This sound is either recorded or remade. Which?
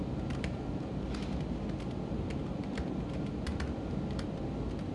recorded